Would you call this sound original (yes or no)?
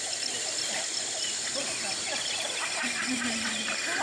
yes